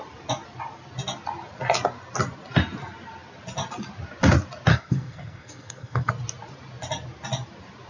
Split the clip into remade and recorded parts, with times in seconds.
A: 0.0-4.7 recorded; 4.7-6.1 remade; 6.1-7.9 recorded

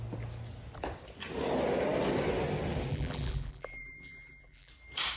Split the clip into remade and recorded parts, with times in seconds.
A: 0.0-2.9 recorded; 2.9-4.7 remade; 4.7-5.2 recorded

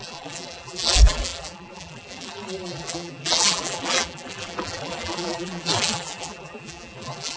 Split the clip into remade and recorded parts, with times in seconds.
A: 0.0-7.4 remade